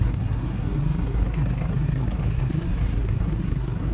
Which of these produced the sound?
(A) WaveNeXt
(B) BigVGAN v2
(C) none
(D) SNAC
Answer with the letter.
D